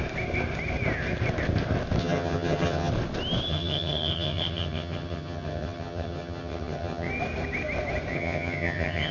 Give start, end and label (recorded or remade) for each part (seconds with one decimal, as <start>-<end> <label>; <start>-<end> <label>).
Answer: 0.0-2.0 recorded; 2.0-2.9 remade; 2.9-3.5 recorded; 3.5-7.1 remade; 7.1-8.1 recorded; 8.1-9.1 remade

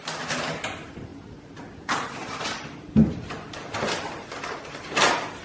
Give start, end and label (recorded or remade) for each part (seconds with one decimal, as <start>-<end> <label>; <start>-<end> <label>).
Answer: 0.0-5.4 recorded

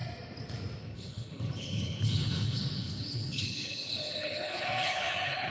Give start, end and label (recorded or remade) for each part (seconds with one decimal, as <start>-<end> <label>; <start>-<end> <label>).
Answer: 0.0-0.8 recorded; 0.8-5.5 remade